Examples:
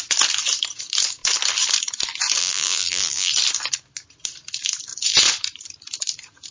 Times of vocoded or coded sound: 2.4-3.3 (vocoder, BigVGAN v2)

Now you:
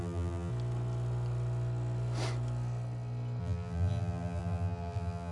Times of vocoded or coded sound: 0.0-0.5 (vocoder, BigVGAN v2); 3.4-5.3

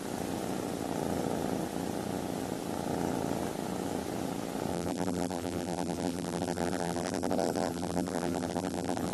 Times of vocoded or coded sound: 4.7-9.1 (vocoder, BigVGAN v2)

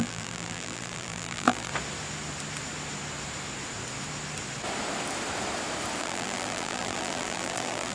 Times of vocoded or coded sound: 0.0-1.7 (vocoder, BigVGAN v2); 6.0-7.9

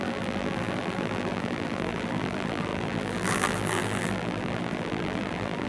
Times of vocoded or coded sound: 0.0-5.7 (vocoder, BigVGAN v2)

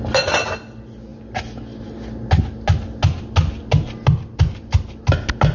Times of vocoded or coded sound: none

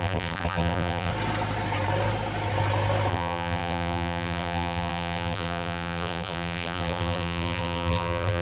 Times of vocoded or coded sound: 0.0-1.1 (vocoder, BigVGAN v2); 3.1-8.4

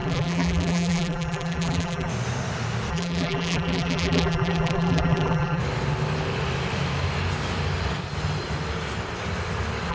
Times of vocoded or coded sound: 0.0-2.1 (vocoder, BigVGAN v2); 2.9-5.6